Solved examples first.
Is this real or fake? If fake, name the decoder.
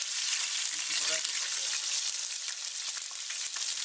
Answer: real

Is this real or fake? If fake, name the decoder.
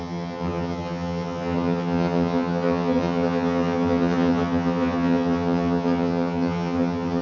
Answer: fake, vocoder, HiFi-GAN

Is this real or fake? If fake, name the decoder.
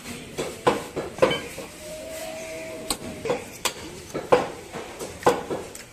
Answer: fake, vocoder, BigVGAN v2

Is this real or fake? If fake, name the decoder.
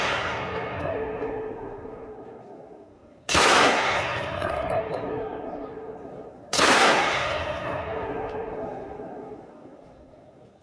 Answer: fake, codec, SNAC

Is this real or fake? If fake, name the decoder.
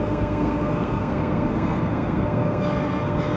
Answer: fake, codec, SNAC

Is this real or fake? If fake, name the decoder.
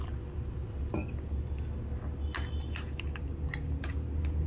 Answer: real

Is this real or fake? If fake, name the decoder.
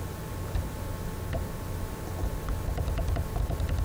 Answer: real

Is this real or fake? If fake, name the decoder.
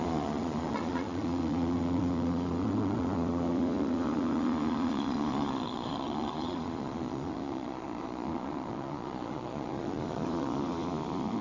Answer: fake, vocoder, Vocos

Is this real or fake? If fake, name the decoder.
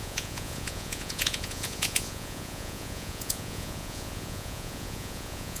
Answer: fake, vocoder, Vocos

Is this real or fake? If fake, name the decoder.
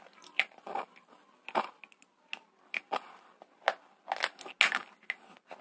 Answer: real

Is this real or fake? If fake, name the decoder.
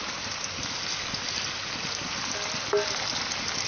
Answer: real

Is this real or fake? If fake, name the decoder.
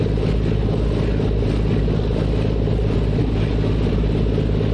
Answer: real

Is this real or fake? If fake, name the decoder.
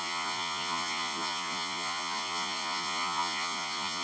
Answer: fake, vocoder, Vocos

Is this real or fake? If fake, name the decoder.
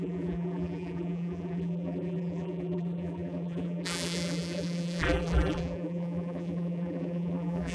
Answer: fake, vocoder, BigVGAN v2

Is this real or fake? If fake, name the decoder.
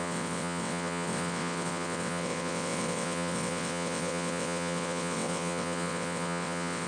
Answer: fake, vocoder, WaveNeXt